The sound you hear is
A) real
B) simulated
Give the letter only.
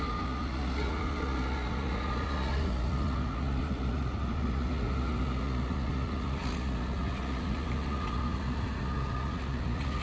B